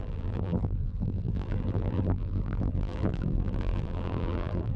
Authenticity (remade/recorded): remade